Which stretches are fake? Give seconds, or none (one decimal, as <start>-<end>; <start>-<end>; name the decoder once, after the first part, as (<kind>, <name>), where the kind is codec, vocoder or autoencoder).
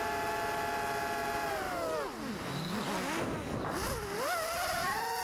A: none